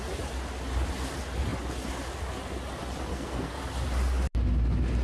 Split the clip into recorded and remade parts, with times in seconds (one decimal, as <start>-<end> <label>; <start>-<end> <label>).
0.0-3.1 recorded; 3.1-3.6 remade; 3.6-5.0 recorded